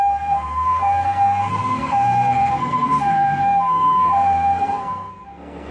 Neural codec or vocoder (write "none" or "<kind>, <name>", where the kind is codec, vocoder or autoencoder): codec, SNAC